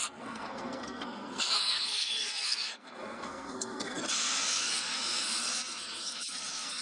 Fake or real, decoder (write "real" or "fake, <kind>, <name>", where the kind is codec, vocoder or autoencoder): fake, codec, SNAC